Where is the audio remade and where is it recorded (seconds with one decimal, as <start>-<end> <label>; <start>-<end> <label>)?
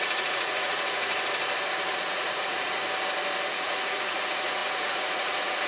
0.0-1.1 remade; 1.1-1.9 recorded; 1.9-2.8 remade; 2.8-3.5 recorded; 3.5-5.7 remade